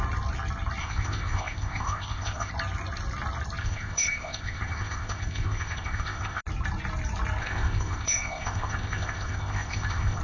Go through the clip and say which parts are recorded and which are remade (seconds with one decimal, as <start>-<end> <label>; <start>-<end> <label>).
0.0-0.8 recorded; 0.8-2.5 remade; 2.5-3.6 recorded; 3.6-6.4 remade; 6.4-7.4 recorded; 7.4-10.2 remade